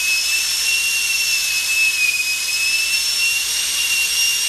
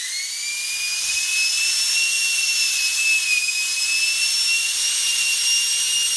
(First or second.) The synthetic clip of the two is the first